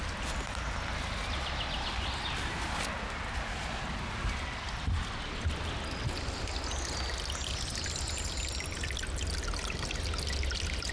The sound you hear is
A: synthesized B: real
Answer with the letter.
B